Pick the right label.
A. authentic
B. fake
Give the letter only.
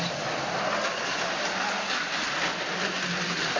A